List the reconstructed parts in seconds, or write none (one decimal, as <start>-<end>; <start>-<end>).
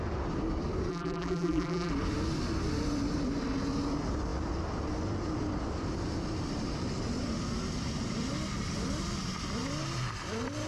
0.9-1.9